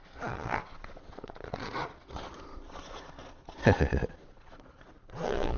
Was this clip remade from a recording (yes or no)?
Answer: yes